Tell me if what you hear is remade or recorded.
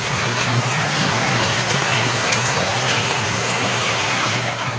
remade